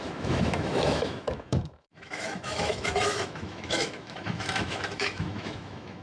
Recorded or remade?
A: remade